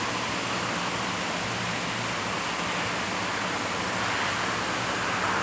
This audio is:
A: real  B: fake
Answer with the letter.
A